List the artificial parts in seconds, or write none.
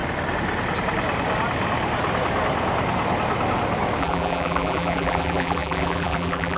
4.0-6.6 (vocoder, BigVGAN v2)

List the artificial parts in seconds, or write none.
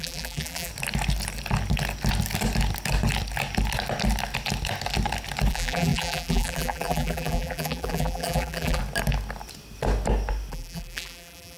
0.0-0.7 (vocoder, BigVGAN v2); 5.5-8.8; 10.5-11.6